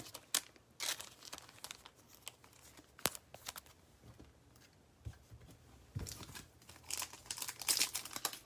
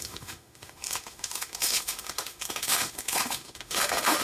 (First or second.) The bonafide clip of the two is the first